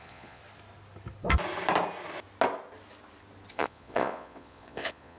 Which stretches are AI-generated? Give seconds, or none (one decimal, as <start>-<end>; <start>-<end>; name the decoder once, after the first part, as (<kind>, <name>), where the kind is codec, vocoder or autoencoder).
0.0-0.4 (vocoder, Vocos); 3.5-5.2

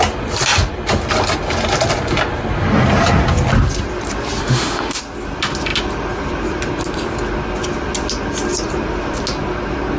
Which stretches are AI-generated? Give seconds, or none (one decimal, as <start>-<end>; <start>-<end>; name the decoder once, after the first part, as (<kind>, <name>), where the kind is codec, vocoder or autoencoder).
4.4-5.0 (autoencoder, DAC-VAE)